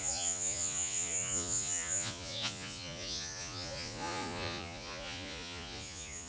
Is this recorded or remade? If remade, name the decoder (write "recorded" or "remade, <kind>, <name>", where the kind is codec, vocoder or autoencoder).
remade, vocoder, Vocos